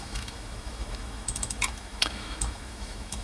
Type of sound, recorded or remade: remade